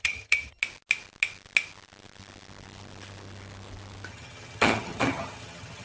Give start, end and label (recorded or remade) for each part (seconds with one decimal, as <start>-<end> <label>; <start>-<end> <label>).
0.0-0.6 remade; 0.6-4.1 recorded; 4.1-5.8 remade